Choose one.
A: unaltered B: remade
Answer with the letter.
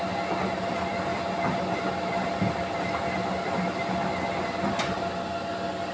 A